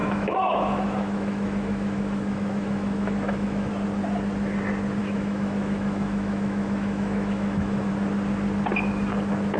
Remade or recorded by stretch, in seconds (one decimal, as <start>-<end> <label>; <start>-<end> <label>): 0.0-3.7 remade; 3.7-5.0 recorded; 5.0-7.9 remade; 7.9-9.6 recorded